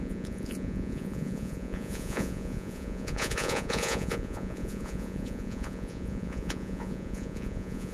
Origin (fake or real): fake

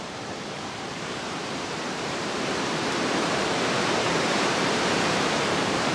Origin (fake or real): fake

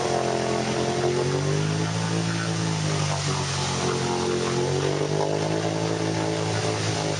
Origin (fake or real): real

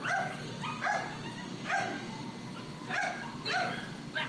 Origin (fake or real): real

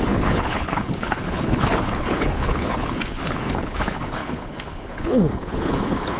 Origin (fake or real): fake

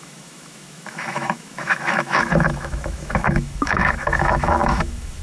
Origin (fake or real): fake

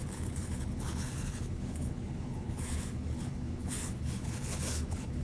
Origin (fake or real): fake